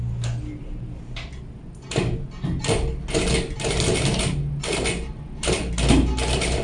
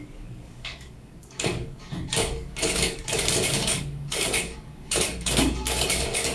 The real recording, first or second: first